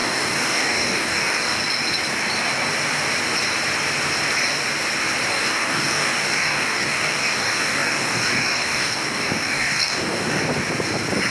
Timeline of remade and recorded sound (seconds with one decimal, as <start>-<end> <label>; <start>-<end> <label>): 0.0-1.6 remade; 1.6-5.3 recorded; 5.3-10.4 remade; 10.4-11.3 recorded